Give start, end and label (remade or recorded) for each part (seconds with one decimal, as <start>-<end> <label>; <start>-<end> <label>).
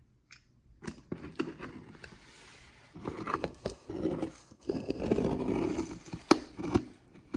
0.0-3.3 recorded; 3.3-3.9 remade; 3.9-4.4 recorded; 4.4-5.0 remade; 5.0-7.4 recorded